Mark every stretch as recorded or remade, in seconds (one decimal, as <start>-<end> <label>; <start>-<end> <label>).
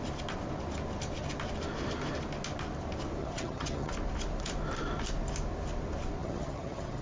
0.0-3.2 recorded; 3.2-3.9 remade; 3.9-6.2 recorded; 6.2-7.0 remade